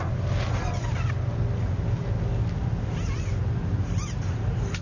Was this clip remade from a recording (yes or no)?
no